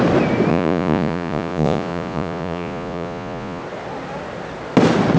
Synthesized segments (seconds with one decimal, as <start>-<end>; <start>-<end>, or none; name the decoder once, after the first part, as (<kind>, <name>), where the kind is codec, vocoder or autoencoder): 0.5-3.6 (vocoder, Vocos)